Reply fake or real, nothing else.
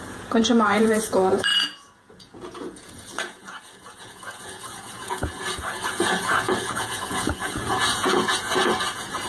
fake